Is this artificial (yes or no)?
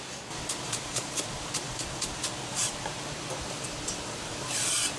no